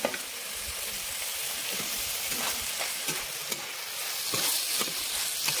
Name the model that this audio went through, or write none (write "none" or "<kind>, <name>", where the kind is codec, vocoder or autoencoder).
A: none